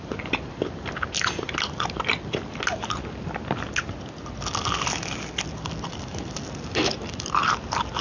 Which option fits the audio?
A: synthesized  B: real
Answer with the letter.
B